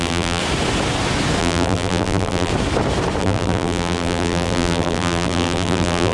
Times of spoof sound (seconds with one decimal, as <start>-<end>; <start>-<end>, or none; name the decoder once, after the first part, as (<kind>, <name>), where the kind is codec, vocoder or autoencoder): 0.0-0.4 (vocoder, BigVGAN v2); 1.4-2.5; 3.2-6.1